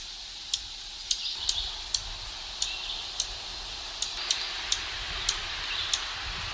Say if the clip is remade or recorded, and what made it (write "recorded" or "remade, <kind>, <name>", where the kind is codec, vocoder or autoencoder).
remade, vocoder, BigVGAN v2